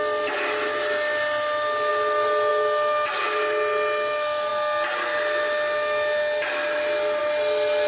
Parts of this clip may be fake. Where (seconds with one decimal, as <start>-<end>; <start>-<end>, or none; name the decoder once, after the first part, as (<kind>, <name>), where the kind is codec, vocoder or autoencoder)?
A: none